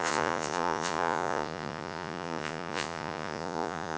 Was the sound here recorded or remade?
remade